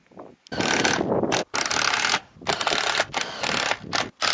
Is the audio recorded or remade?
recorded